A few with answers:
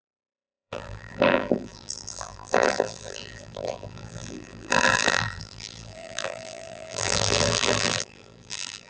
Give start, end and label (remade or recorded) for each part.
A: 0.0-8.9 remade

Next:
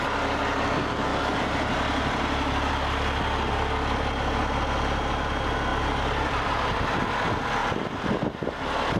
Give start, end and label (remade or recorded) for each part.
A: 0.0-1.1 recorded; 1.1-2.7 remade; 2.7-5.7 recorded; 5.7-7.0 remade; 7.0-7.6 recorded; 7.6-8.3 remade; 8.3-9.0 recorded

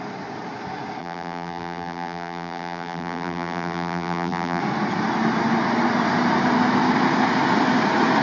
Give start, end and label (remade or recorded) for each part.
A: 0.0-1.0 recorded; 1.0-4.6 remade; 4.6-8.2 recorded

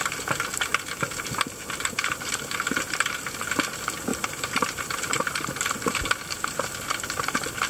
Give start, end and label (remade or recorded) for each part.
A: 0.0-4.1 recorded; 4.1-7.2 remade; 7.2-7.7 recorded